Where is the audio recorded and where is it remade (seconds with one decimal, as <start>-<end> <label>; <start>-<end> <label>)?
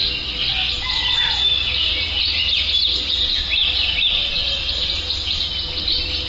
0.0-6.3 recorded